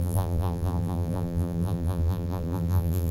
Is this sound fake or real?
fake